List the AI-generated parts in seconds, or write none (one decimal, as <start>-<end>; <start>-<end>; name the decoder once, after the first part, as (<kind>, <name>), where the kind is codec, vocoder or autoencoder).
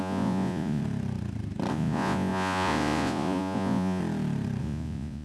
0.0-0.8 (vocoder, Vocos); 1.7-4.0; 4.6-5.2